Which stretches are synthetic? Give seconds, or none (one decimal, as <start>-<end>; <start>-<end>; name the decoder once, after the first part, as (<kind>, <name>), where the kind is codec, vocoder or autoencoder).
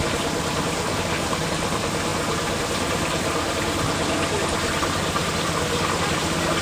none